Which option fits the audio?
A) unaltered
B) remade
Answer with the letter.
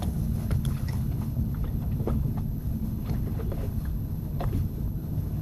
B